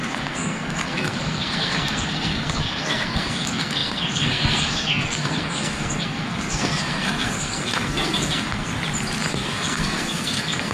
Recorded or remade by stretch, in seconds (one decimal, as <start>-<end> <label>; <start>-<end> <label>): 0.0-8.7 remade; 8.7-9.3 recorded; 9.3-10.7 remade